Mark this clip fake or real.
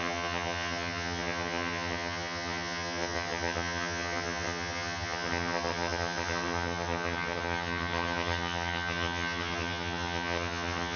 fake